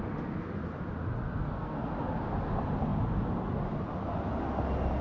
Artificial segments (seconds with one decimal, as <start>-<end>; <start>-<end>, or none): 1.4-1.9